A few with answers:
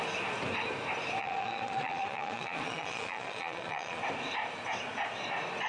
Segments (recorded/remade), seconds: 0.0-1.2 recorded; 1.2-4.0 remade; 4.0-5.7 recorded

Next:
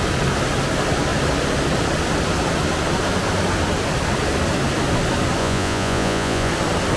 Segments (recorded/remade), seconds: 0.0-5.4 recorded; 5.4-6.5 remade; 6.5-7.0 recorded

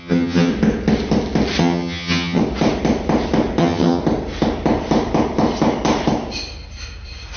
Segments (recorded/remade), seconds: 0.0-0.5 remade; 0.5-1.6 recorded; 1.6-2.4 remade; 2.4-3.6 recorded; 3.6-4.0 remade; 4.0-7.4 recorded

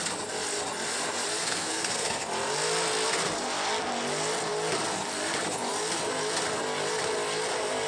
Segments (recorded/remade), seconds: 0.0-1.4 recorded; 1.4-2.2 remade; 2.2-7.9 recorded

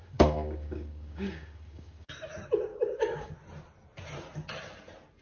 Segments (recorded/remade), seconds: 0.0-2.1 remade; 2.1-2.7 recorded; 2.7-3.3 remade; 3.3-5.2 recorded